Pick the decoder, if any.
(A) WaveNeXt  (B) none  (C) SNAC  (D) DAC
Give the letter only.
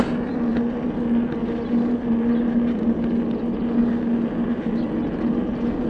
B